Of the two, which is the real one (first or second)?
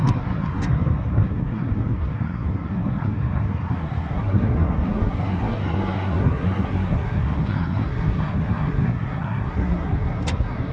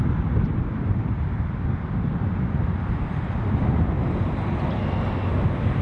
second